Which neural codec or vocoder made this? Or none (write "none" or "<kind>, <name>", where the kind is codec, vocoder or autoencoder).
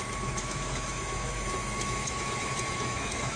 autoencoder, DAC-VAE